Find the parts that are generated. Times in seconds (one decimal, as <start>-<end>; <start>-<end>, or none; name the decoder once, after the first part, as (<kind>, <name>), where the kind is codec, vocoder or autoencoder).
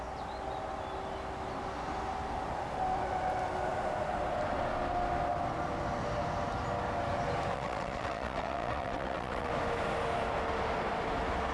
7.5-9.5 (vocoder, WaveNeXt)